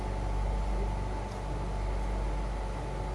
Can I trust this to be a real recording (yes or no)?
yes